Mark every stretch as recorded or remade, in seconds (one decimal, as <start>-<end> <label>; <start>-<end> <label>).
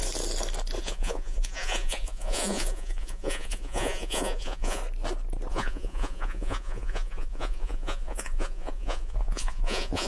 0.0-0.8 recorded; 0.8-4.8 remade; 4.8-5.5 recorded; 5.5-10.1 remade